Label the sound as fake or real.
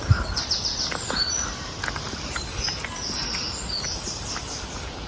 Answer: real